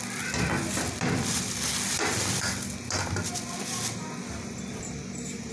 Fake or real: real